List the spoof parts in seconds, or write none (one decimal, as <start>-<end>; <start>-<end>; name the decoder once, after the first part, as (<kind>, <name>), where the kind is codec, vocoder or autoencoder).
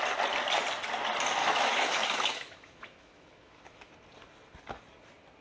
1.4-3.9 (autoencoder, DAC-VAE)